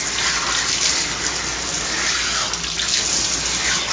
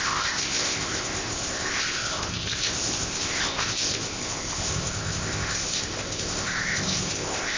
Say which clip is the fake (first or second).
second